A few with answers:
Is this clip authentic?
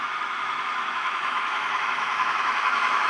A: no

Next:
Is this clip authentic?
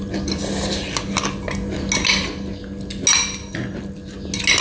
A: yes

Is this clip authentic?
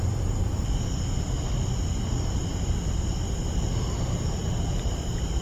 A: yes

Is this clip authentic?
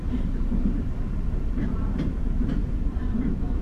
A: no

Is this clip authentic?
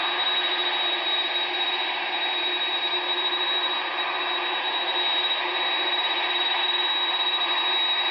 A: yes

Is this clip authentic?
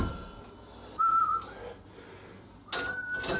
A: yes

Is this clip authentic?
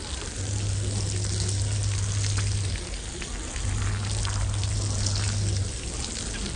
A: yes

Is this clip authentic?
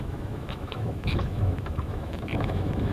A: no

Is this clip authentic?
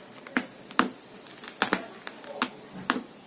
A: yes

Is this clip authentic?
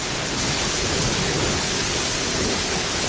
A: no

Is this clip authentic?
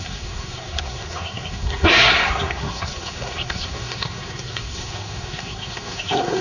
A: no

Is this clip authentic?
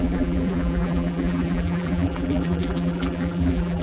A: no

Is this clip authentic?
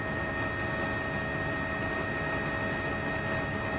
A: yes